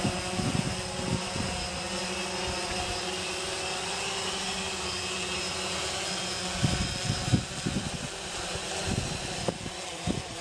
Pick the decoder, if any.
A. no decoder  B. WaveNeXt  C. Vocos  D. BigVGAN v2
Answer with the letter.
A